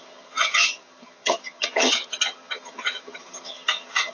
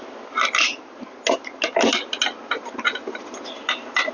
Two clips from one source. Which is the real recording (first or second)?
second